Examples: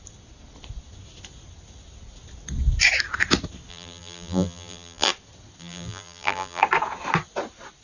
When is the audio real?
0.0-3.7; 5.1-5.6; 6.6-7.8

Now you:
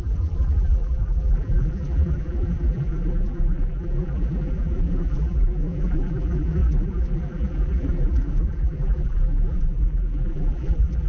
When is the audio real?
none